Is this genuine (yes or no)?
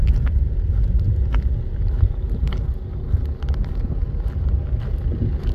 yes